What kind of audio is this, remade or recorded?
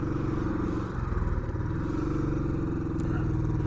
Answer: recorded